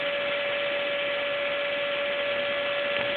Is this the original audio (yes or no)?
yes